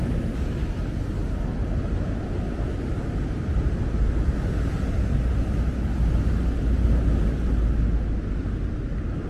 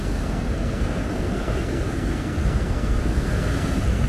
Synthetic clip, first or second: second